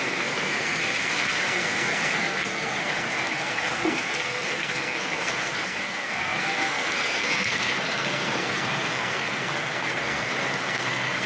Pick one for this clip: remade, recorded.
remade